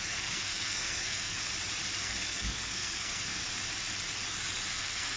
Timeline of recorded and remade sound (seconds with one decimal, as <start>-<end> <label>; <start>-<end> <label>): 0.0-1.4 remade; 1.4-2.0 recorded; 2.0-3.4 remade; 3.4-4.7 recorded; 4.7-5.2 remade